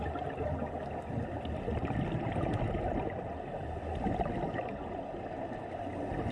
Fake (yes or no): no